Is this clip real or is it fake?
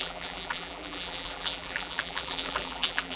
fake